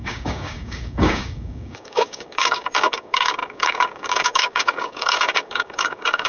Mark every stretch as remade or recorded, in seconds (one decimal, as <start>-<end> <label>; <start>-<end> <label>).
0.0-6.3 remade